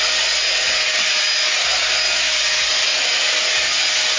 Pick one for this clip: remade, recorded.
recorded